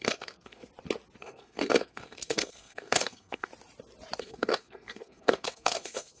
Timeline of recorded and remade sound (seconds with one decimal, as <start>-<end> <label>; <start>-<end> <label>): 0.0-0.7 remade; 0.7-1.2 recorded; 1.2-3.5 remade; 3.5-4.2 recorded; 4.2-6.2 remade